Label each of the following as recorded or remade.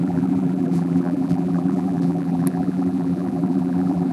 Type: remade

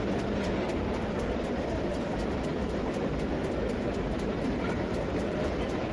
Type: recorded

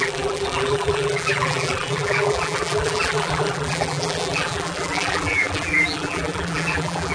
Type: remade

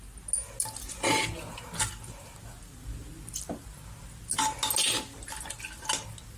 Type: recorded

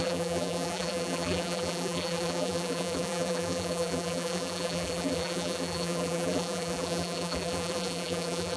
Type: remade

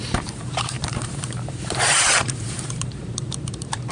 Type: remade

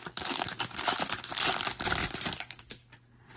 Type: recorded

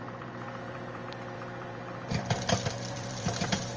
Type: remade